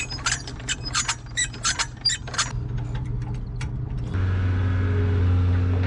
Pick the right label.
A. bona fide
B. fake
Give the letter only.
A